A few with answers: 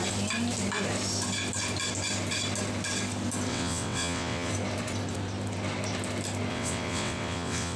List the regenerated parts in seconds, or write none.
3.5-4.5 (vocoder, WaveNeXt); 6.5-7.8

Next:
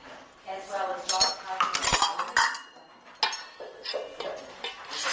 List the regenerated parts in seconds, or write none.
none

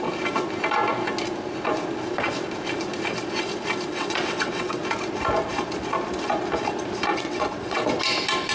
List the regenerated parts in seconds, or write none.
3.9-4.8 (vocoder, WaveNeXt); 7.1-7.8

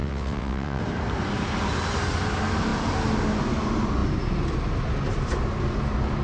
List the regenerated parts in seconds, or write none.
0.0-0.8 (vocoder, WaveNeXt)